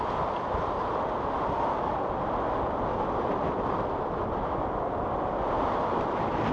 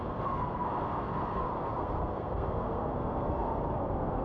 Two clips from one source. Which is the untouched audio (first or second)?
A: first